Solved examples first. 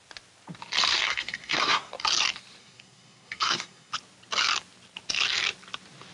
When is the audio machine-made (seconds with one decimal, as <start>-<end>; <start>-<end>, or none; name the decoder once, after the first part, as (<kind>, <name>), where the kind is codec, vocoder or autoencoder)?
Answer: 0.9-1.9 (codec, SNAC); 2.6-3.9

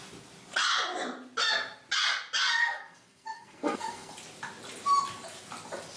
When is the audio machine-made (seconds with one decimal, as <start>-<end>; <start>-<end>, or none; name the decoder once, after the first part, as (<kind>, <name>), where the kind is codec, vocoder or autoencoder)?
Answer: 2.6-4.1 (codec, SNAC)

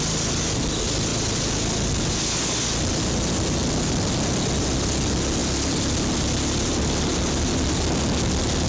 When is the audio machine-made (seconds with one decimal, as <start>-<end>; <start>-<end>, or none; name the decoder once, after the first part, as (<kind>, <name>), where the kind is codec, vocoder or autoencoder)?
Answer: none